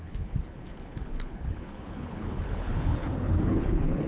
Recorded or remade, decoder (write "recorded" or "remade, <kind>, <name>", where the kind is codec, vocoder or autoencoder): remade, codec, HILCodec